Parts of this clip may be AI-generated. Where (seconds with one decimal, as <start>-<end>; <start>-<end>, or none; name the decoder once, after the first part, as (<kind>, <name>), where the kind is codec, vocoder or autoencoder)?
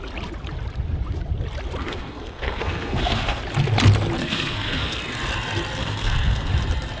1.8-3.4 (codec, SNAC); 4.2-5.0; 5.8-6.5